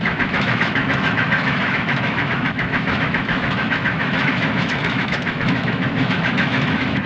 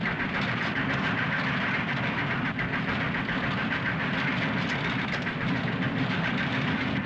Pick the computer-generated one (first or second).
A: first